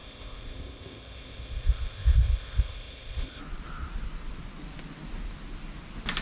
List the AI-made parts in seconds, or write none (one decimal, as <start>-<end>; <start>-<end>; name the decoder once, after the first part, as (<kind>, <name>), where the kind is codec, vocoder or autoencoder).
0.0-3.4 (codec, ZipCodec)